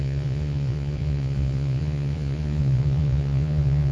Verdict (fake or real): fake